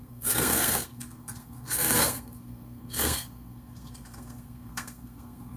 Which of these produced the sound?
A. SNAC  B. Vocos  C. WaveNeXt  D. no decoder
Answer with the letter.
A